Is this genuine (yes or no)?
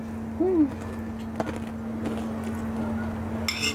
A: yes